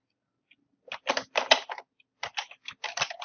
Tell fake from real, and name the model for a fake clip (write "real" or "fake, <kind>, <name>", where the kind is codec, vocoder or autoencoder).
real